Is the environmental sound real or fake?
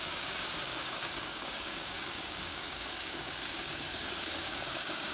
fake